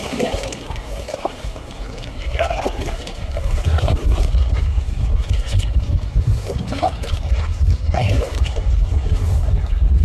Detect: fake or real fake